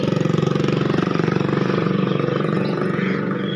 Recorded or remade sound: remade